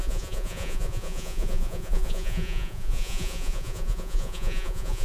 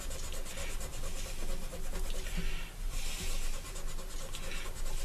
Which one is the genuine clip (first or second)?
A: second